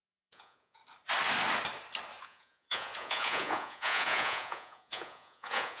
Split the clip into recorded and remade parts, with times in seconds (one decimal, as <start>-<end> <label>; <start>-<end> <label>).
0.0-0.8 remade; 0.8-2.2 recorded; 2.2-5.8 remade